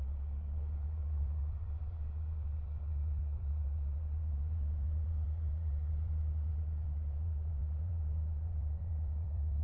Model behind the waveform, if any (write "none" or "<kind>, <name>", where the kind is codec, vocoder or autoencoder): vocoder, WaveNeXt